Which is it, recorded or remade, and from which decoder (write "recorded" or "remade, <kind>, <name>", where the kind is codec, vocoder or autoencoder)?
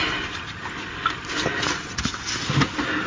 recorded